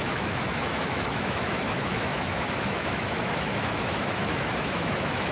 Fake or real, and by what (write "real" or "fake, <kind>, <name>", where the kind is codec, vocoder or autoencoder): fake, autoencoder, DAC-VAE